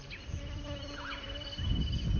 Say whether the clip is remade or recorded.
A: recorded